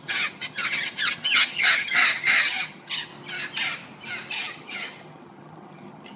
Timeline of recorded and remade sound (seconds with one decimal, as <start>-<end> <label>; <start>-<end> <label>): 0.0-3.1 remade; 3.1-4.3 recorded; 4.3-6.2 remade